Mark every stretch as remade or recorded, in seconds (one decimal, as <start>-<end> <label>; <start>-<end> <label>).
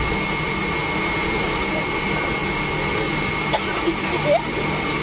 0.0-1.2 recorded; 1.2-1.7 remade; 1.7-5.0 recorded